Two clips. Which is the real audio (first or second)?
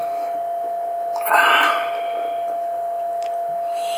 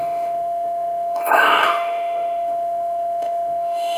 first